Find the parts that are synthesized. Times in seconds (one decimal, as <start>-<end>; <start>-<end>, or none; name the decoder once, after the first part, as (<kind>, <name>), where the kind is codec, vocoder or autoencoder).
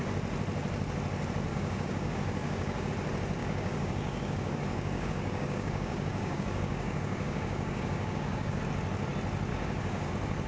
1.5-2.9 (codec, DAC); 3.4-8.6; 9.5-10.1